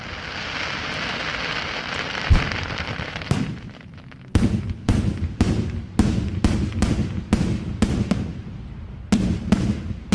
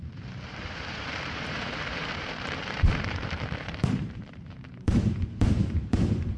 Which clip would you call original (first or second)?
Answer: first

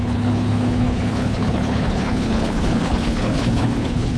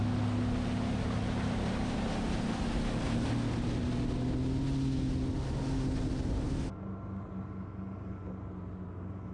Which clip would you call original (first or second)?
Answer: second